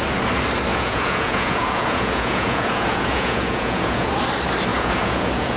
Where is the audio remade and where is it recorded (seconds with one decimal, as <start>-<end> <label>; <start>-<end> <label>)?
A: 0.0-0.7 recorded; 0.7-4.1 remade; 4.1-4.7 recorded; 4.7-5.6 remade